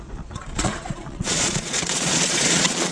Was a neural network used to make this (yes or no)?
yes